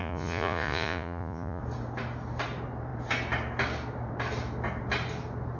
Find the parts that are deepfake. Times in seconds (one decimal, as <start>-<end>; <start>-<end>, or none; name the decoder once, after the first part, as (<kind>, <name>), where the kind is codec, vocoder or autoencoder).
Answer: 0.0-1.6 (vocoder, Vocos)